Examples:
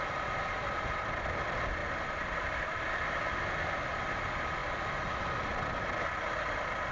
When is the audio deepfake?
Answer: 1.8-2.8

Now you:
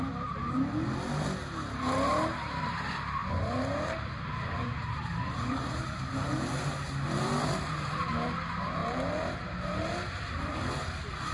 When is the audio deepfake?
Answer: 3.2-8.3; 8.8-10.7

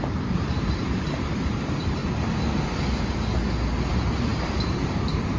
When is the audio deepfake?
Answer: 0.0-2.0; 3.9-5.4

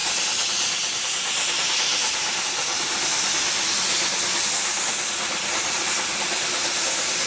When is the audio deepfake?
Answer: none